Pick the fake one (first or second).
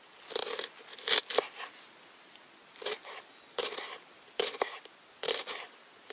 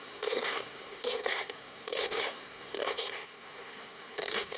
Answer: second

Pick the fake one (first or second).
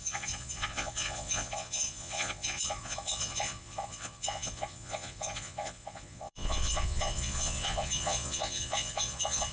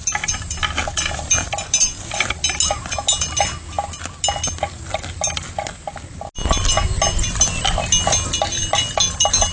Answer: first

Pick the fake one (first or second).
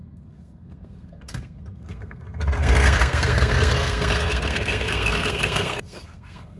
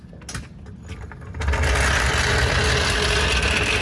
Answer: first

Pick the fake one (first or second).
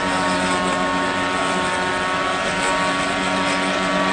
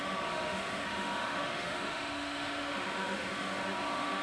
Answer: second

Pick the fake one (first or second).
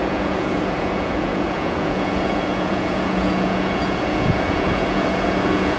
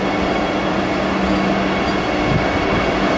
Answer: first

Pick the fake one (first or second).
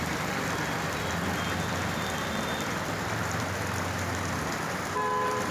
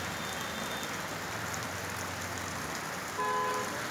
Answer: first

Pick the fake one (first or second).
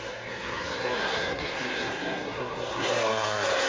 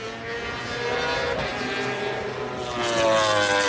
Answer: first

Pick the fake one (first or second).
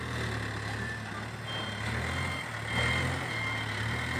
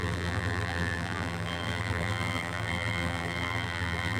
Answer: second